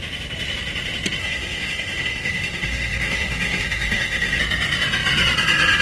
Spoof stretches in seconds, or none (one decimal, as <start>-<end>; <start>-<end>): 1.2-4.4